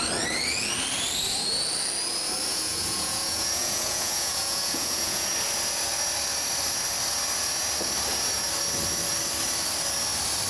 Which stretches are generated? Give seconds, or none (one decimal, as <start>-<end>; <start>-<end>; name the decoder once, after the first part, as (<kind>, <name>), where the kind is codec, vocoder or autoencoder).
2.5-5.3 (vocoder, Vocos)